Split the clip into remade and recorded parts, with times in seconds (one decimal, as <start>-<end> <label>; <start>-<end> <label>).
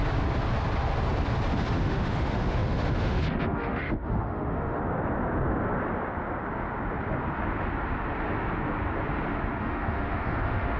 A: 0.0-1.8 recorded; 1.8-4.8 remade; 4.8-9.6 recorded; 9.6-10.8 remade